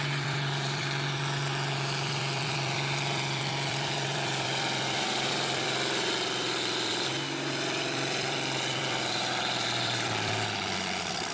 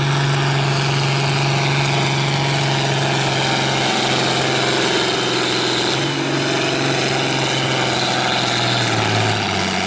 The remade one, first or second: first